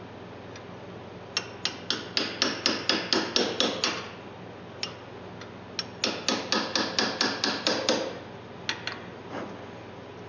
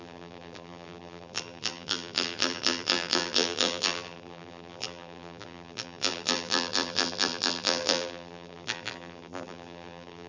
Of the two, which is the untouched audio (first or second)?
first